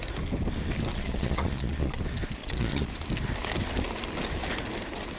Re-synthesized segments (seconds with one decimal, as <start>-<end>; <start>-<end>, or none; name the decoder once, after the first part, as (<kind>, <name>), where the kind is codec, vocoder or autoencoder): 0.9-2.0 (vocoder, Vocos); 2.4-2.9